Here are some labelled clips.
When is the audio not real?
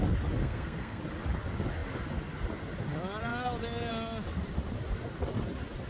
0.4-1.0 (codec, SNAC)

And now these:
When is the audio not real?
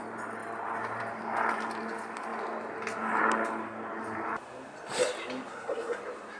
5.5-6.0 (codec, SNAC)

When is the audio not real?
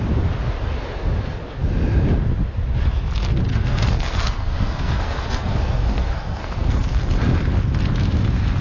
3.5-7.1 (codec, SNAC)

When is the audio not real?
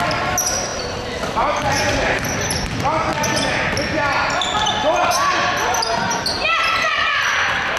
none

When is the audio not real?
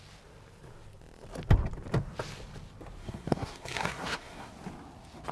3.0-4.5 (codec, SNAC)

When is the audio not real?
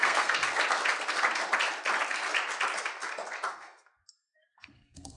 0.0-0.4 (codec, SNAC); 3.5-5.2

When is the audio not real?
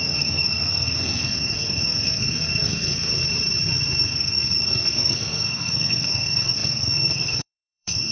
0.0-3.1 (codec, SNAC); 4.0-8.1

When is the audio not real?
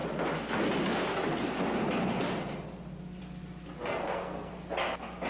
3.8-4.5 (codec, SNAC)